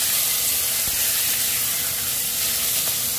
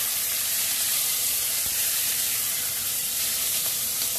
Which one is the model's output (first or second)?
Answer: second